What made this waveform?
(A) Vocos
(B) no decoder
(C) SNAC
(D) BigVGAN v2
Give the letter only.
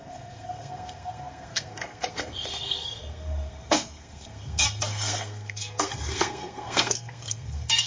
C